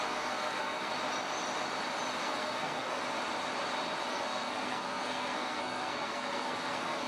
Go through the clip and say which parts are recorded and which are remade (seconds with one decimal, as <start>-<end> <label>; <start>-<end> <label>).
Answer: 0.0-0.9 remade; 0.9-2.2 recorded; 2.2-3.0 remade; 3.0-4.1 recorded; 4.1-7.1 remade